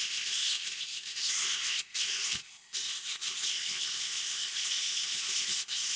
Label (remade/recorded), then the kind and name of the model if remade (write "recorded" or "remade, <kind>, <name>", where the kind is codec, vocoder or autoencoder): remade, codec, ZipCodec